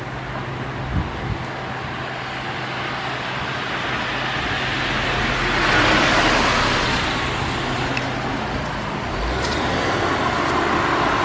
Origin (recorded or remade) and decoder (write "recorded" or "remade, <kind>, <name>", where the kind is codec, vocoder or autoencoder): recorded